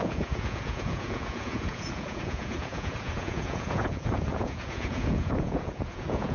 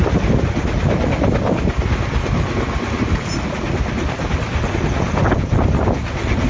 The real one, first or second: second